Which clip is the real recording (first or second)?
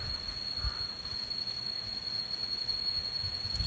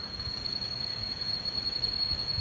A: first